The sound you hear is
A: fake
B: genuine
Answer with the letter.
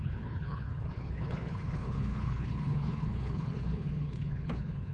A